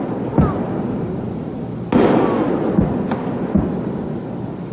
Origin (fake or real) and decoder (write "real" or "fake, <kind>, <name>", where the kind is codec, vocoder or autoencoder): real